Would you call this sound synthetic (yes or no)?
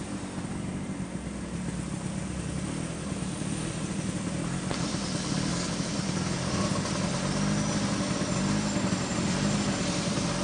no